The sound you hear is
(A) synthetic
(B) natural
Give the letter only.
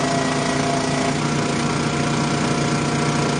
B